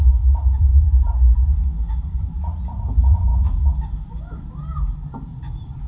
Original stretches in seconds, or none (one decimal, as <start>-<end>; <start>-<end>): none